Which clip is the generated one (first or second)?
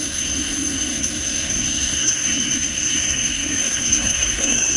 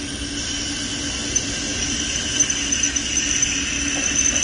first